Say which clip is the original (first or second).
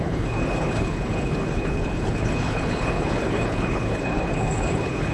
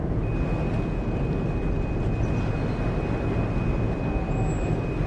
second